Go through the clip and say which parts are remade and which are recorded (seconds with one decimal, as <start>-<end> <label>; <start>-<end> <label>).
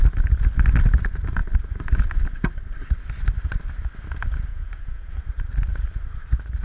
0.0-4.5 recorded; 4.5-5.1 remade; 5.1-6.6 recorded